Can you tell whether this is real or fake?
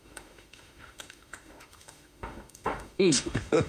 fake